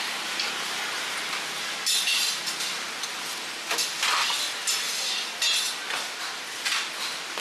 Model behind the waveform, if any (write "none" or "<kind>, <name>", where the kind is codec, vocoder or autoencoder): none